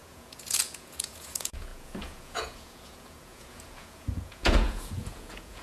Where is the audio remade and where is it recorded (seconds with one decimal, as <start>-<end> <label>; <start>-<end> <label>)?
0.0-5.6 remade